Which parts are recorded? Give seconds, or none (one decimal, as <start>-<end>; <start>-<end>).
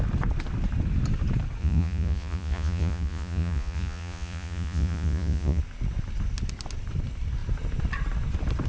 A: 0.0-1.6; 5.6-8.7